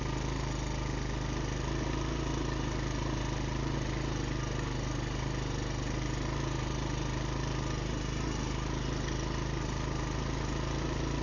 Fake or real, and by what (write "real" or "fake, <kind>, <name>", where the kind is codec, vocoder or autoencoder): real